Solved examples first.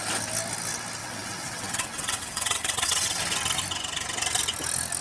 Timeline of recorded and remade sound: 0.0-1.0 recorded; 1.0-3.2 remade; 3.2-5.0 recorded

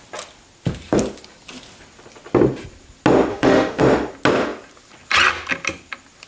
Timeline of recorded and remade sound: 0.0-3.3 recorded; 3.3-3.8 remade; 3.8-6.3 recorded

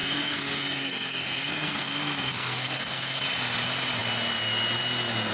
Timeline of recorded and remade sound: 0.0-3.2 remade; 3.2-5.3 recorded

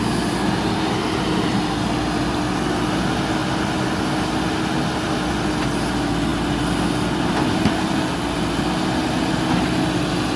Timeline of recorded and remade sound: 0.0-10.4 recorded

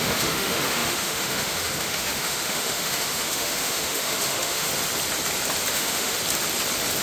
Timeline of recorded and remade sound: 0.0-4.7 remade; 4.7-5.7 recorded; 5.7-6.2 remade; 6.2-7.0 recorded

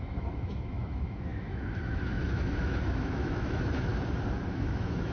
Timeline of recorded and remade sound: 0.0-3.9 remade; 3.9-4.5 recorded; 4.5-5.1 remade

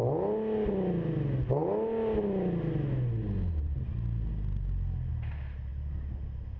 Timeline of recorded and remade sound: 0.0-6.6 recorded

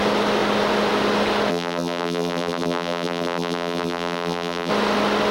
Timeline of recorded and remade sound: 0.0-1.5 recorded; 1.5-4.7 remade; 4.7-5.3 recorded